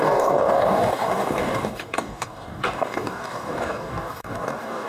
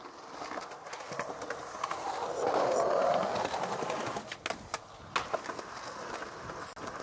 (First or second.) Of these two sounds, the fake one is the first